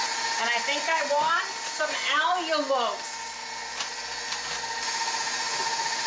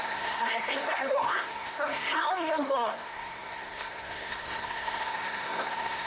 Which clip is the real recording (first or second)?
first